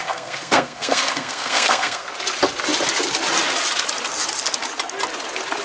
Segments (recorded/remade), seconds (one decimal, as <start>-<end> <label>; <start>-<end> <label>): 0.0-2.1 remade; 2.1-5.6 recorded